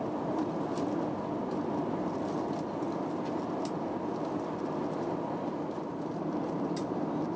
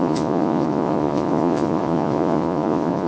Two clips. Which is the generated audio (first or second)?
second